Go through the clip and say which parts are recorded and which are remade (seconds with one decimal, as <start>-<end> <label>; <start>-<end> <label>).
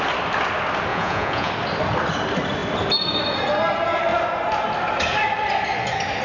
0.0-0.9 recorded; 0.9-1.5 remade; 1.5-6.2 recorded